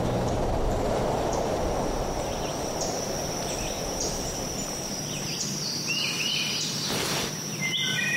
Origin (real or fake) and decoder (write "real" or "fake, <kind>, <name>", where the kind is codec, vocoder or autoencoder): fake, vocoder, BigVGAN v2